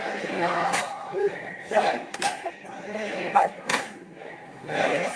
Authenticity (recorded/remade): remade